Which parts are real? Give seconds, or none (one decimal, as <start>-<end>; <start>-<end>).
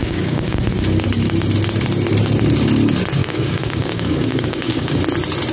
0.6-3.2; 5.0-5.5